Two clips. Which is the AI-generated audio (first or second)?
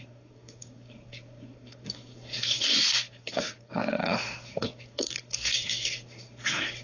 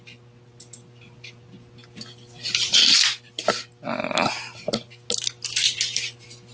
first